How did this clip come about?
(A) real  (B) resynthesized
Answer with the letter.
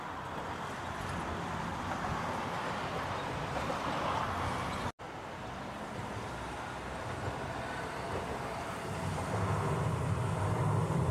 A